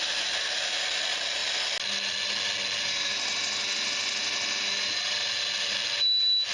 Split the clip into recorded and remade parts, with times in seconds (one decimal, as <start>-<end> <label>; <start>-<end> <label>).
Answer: 0.0-6.5 recorded